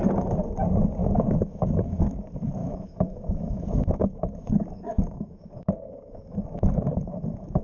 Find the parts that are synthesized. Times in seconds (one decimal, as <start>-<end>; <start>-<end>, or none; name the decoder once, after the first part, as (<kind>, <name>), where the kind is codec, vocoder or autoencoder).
1.0-2.0 (autoencoder, DAC-VAE); 2.6-7.6